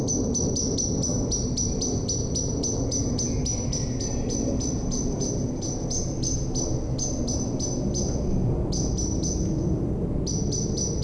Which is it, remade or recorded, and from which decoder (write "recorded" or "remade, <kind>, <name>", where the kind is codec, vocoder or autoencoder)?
recorded